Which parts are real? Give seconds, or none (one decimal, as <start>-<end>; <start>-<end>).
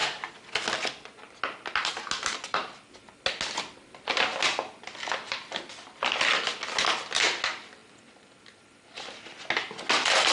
0.0-10.3